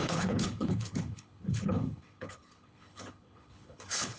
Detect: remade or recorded remade